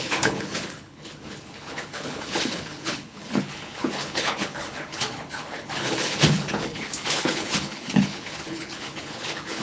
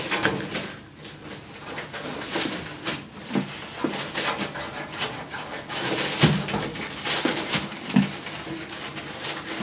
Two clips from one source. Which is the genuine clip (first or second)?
second